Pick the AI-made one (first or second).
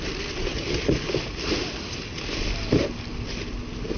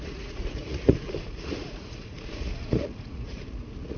second